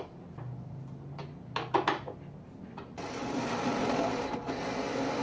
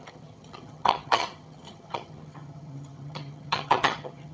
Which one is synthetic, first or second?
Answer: second